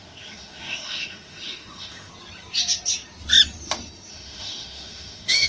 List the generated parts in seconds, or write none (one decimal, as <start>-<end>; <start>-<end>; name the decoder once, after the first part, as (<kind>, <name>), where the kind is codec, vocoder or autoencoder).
0.0-2.1 (autoencoder, DAC-VAE); 4.1-5.5